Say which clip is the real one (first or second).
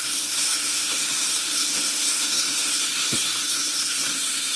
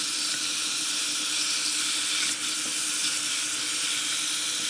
second